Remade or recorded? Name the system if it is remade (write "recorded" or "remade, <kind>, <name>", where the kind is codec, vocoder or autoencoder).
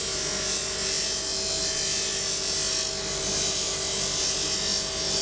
recorded